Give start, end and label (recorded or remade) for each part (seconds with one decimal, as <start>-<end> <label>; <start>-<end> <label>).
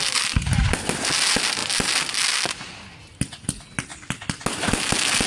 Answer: 0.0-5.3 recorded